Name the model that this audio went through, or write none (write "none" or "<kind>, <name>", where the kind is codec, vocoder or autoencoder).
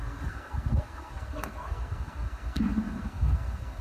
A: codec, SNAC